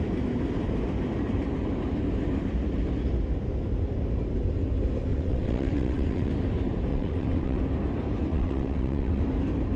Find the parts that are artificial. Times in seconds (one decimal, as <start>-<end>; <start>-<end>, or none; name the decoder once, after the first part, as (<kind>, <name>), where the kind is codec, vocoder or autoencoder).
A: 5.1-6.3 (vocoder, WaveNeXt); 6.9-7.6; 8.3-9.2